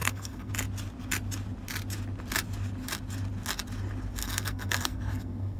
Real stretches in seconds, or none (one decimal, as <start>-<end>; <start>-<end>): 0.5-4.2